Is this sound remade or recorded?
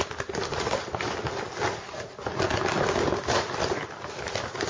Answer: recorded